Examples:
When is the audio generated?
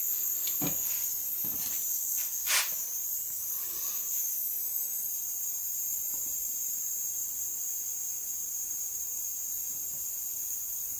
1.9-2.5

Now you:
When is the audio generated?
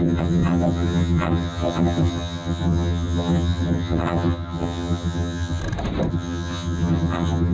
0.0-5.6; 6.1-7.5